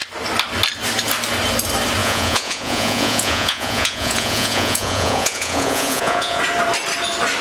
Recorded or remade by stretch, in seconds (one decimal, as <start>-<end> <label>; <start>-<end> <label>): 0.0-2.0 recorded; 2.0-6.4 remade; 6.4-7.4 recorded